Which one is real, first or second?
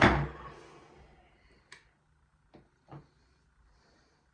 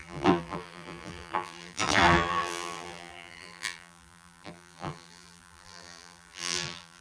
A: first